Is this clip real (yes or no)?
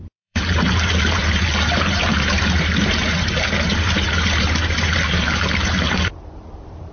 no